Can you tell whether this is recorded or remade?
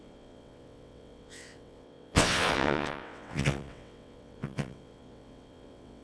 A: remade